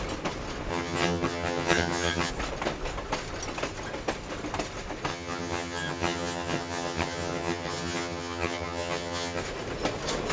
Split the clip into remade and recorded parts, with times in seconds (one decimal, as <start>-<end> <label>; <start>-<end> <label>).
0.0-0.7 recorded; 0.7-2.3 remade; 2.3-5.1 recorded; 5.1-9.4 remade; 9.4-10.3 recorded